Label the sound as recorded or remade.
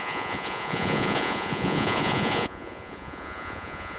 remade